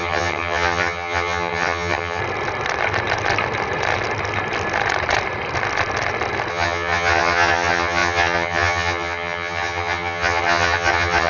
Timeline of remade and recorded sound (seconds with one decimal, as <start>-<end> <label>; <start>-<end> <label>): 0.0-2.2 remade; 2.2-6.5 recorded; 6.5-11.3 remade

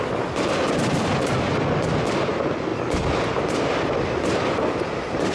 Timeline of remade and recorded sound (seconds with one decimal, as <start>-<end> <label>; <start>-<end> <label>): 0.0-5.3 recorded

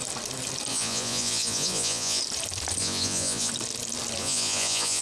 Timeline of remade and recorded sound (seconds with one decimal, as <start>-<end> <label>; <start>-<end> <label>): 0.0-0.7 recorded; 0.7-2.2 remade; 2.2-2.8 recorded; 2.8-3.5 remade; 3.5-4.2 recorded; 4.2-5.0 remade

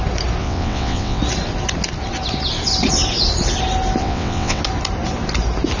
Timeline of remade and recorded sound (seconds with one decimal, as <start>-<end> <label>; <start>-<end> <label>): 0.0-0.4 recorded; 0.4-1.2 remade; 1.2-4.0 recorded; 4.0-4.6 remade; 4.6-5.8 recorded